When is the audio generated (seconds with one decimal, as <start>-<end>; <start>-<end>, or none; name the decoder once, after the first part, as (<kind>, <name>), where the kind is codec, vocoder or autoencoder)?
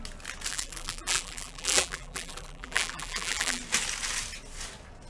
0.5-3.6 (vocoder, BigVGAN v2)